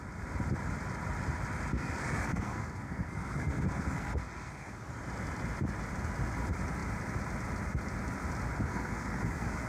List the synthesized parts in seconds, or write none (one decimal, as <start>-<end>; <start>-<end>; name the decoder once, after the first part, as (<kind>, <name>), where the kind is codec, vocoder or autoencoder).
1.7-4.8 (codec, SNAC); 8.7-9.7